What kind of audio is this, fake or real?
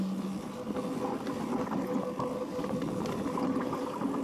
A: real